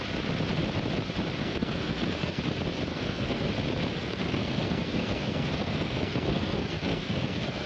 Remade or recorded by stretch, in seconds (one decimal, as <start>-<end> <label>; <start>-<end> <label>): 0.0-1.4 recorded; 1.4-2.4 remade; 2.4-2.9 recorded; 2.9-3.5 remade; 3.5-3.9 recorded; 3.9-7.7 remade